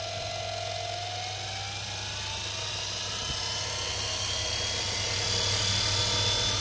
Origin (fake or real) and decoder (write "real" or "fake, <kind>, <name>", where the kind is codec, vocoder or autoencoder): real